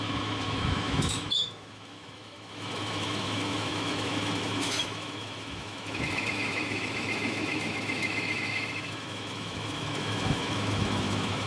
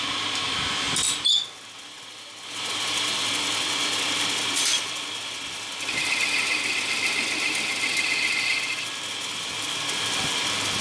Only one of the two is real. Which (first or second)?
second